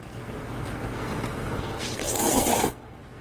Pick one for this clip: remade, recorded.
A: remade